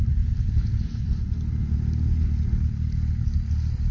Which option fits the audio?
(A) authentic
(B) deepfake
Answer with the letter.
A